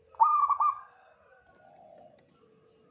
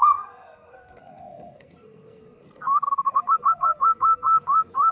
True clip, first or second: first